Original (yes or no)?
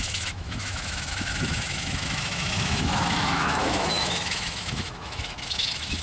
no